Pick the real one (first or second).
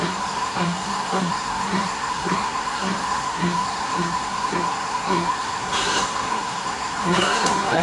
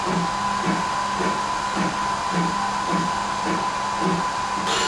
second